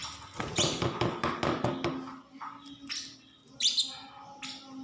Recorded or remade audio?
recorded